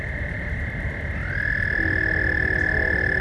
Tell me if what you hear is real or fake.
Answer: real